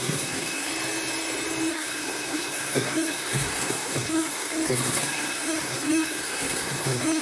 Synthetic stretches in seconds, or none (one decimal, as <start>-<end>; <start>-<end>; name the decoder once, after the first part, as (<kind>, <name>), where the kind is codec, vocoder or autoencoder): 0.0-0.7 (codec, SNAC); 1.7-7.2